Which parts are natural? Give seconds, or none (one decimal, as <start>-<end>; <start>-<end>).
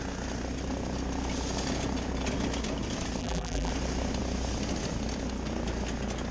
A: 0.0-3.2; 3.7-6.3